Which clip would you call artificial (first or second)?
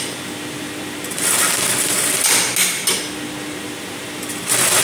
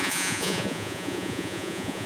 second